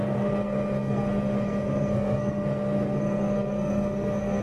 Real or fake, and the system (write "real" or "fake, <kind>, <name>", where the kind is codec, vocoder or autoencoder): fake, codec, SNAC